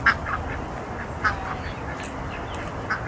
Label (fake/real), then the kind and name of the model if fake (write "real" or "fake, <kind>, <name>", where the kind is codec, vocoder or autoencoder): real